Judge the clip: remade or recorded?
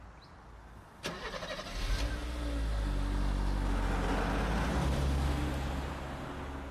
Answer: recorded